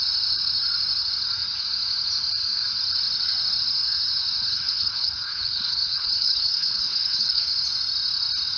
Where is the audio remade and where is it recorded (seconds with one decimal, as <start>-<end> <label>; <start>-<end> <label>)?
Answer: 0.0-4.4 recorded; 4.4-7.4 remade; 7.4-8.6 recorded